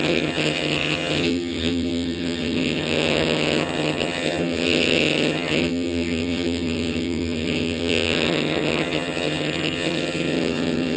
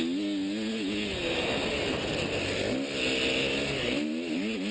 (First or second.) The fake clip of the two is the first